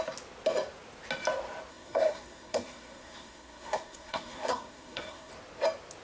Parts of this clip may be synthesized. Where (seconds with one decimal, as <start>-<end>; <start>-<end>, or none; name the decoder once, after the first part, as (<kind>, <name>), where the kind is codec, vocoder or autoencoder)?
1.7-5.3 (codec, SNAC)